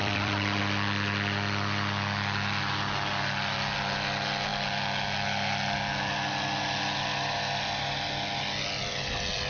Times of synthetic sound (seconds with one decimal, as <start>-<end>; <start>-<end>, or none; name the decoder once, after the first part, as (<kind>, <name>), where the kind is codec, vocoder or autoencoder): 0.0-0.6 (vocoder, BigVGAN v2)